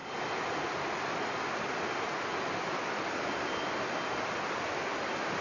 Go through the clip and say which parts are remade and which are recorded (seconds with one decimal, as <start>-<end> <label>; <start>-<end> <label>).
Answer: 0.0-5.4 recorded